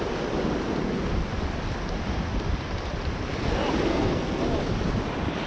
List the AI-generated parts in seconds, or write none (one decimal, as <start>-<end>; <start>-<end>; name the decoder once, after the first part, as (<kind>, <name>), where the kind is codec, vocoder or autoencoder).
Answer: 3.9-4.4 (codec, SNAC)